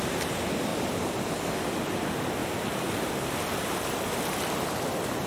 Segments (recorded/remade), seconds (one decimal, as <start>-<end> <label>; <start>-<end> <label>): 0.0-0.7 recorded; 0.7-1.3 remade; 1.3-5.3 recorded